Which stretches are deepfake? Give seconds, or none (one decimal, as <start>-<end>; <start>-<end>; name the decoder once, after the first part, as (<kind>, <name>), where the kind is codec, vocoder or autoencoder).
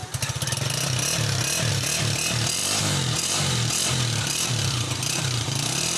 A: 1.7-6.0 (vocoder, BigVGAN v2)